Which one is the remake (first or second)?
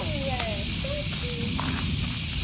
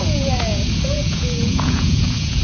second